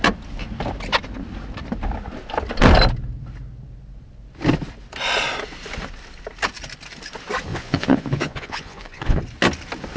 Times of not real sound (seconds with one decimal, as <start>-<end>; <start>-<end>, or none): 7.5-9.2